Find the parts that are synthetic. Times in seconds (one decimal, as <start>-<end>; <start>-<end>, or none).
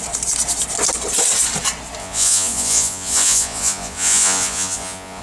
2.0-5.2